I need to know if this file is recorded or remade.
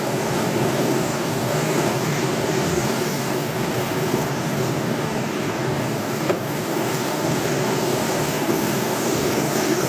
remade